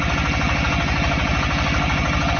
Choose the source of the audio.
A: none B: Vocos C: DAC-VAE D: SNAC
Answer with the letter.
A